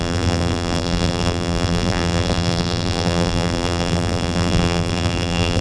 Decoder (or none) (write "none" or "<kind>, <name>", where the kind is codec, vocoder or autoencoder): vocoder, BigVGAN v2